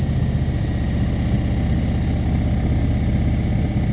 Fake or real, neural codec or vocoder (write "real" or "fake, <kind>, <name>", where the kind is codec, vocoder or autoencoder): real